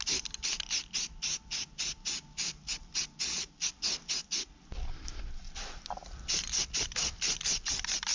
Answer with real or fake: real